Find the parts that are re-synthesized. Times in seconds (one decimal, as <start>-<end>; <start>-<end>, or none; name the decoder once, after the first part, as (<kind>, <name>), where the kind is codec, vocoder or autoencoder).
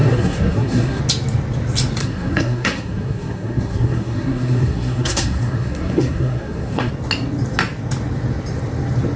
0.0-1.0 (codec, SNAC); 2.0-6.9